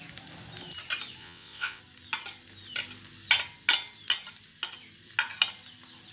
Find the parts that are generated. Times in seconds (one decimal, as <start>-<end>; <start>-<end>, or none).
1.2-1.8